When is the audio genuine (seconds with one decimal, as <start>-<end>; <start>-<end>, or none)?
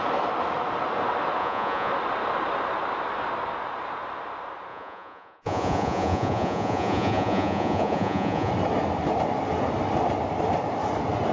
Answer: 0.0-1.4; 1.9-4.7; 8.5-11.3